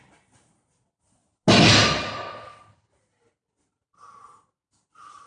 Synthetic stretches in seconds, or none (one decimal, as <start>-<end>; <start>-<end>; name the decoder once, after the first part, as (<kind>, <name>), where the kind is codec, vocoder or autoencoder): none